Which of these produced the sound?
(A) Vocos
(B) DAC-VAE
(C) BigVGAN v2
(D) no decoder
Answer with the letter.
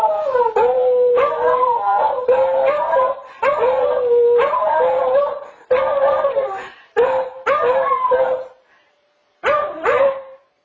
C